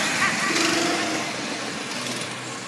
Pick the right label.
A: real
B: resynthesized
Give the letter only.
A